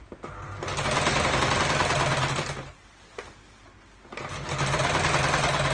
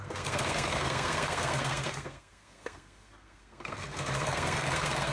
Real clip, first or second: first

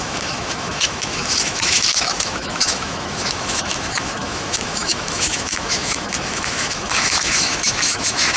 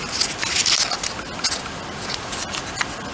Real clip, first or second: second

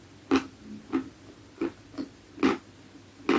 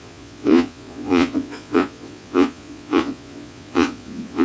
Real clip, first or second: first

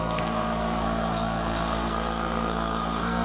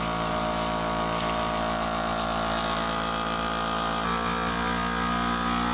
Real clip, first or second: second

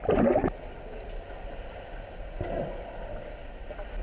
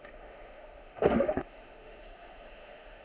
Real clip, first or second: first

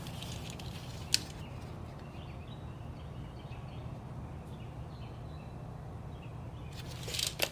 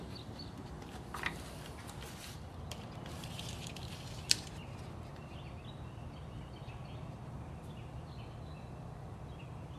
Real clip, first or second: first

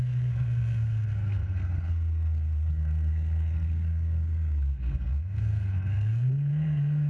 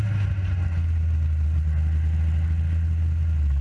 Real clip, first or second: second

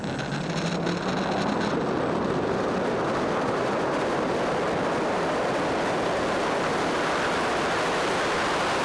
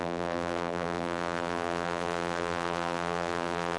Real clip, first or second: first